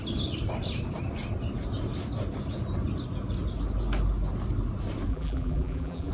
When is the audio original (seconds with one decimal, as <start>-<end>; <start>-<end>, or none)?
0.0-5.1